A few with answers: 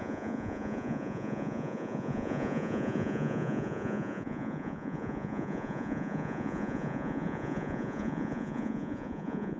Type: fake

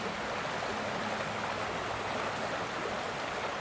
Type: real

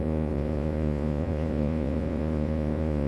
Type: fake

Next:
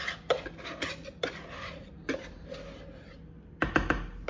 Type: real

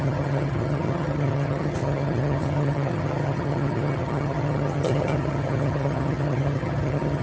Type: fake